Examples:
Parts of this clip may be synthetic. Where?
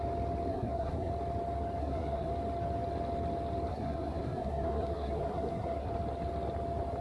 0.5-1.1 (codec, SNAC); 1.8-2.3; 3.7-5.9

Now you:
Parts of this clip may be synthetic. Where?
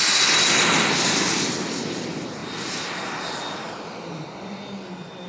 none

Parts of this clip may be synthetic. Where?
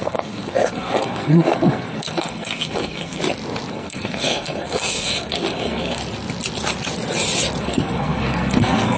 0.0-3.2 (codec, SNAC); 3.7-6.0; 7.6-9.0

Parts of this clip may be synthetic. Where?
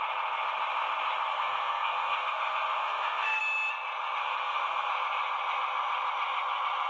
1.3-3.4 (codec, SNAC); 4.2-4.9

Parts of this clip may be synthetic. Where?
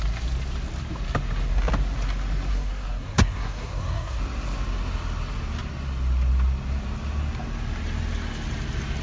2.5-4.2 (codec, SNAC)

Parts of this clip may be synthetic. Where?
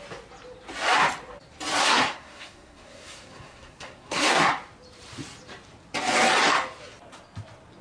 1.8-4.5 (codec, SNAC)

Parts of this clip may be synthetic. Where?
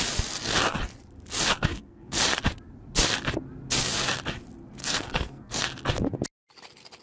1.6-2.2 (codec, SNAC); 4.8-5.6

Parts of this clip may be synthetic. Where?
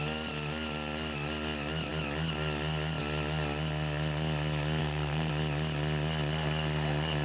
4.8-5.3 (codec, SNAC)